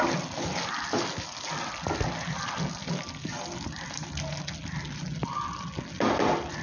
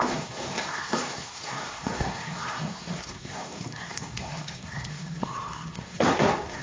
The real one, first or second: first